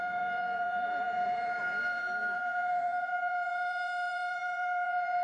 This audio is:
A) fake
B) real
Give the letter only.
A